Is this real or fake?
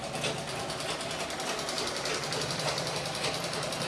real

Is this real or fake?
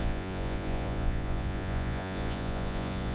fake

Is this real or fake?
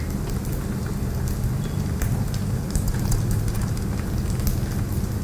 real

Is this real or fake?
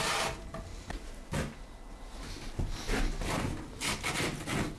real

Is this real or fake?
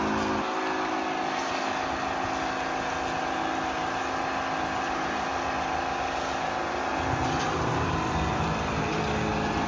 real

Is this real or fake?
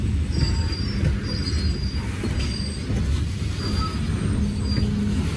real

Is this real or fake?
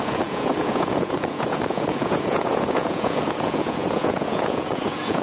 fake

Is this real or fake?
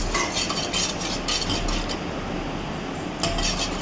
real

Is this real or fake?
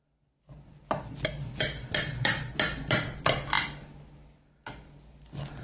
real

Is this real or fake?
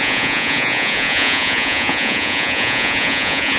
fake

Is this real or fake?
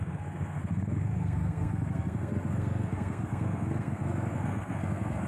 fake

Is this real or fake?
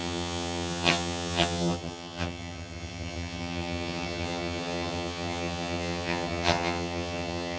fake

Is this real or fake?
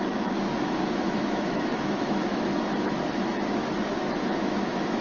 fake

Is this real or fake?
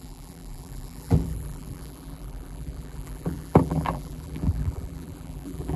fake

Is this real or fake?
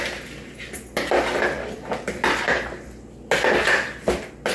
real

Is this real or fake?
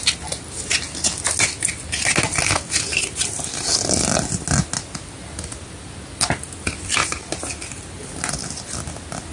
real